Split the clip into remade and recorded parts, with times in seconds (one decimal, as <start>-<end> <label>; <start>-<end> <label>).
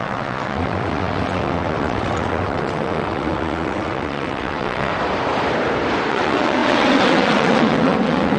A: 0.0-4.9 remade; 4.9-6.1 recorded; 6.1-8.4 remade